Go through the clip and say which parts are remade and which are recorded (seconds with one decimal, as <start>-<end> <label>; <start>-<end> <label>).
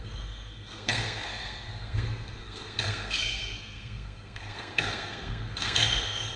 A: 0.0-6.4 remade